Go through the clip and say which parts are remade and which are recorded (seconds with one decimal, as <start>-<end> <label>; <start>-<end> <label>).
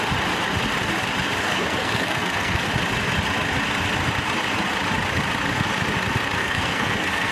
0.0-1.5 recorded; 1.5-2.7 remade; 2.7-6.4 recorded; 6.4-7.3 remade